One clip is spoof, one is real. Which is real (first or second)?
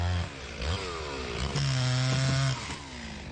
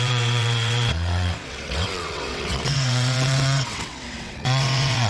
first